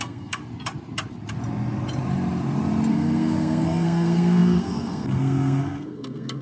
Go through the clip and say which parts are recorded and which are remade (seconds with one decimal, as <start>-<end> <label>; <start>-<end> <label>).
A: 0.0-0.4 remade; 0.4-2.9 recorded; 2.9-6.4 remade